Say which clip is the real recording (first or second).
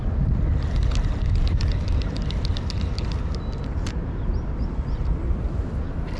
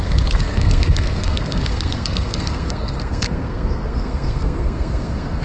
first